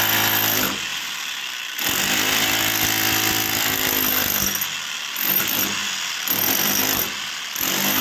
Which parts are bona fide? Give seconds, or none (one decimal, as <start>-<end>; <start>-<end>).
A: 0.0-0.9; 2.0-5.8; 6.8-8.0